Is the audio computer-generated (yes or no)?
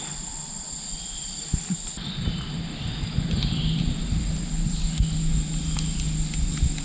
no